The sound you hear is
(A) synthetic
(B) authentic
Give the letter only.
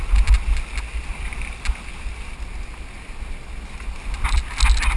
B